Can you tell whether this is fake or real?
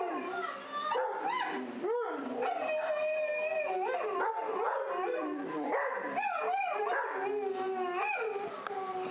real